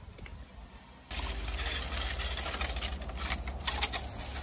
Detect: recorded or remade recorded